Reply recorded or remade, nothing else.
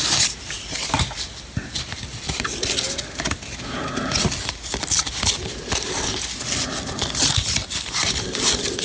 remade